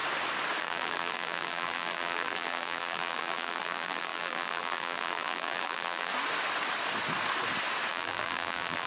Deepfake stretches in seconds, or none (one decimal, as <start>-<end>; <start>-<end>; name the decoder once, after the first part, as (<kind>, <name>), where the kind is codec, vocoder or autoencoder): 0.6-6.1 (vocoder, BigVGAN v2); 7.9-8.9